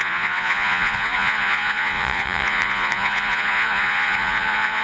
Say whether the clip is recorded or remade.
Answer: remade